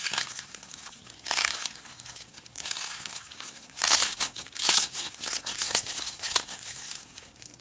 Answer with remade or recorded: remade